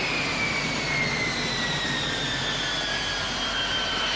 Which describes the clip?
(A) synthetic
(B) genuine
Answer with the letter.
B